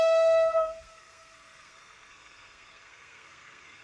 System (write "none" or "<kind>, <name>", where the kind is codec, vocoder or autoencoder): codec, SNAC